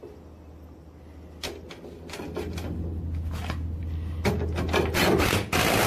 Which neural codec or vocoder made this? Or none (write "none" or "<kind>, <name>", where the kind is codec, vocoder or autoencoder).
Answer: none